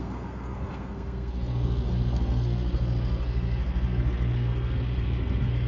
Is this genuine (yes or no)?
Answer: no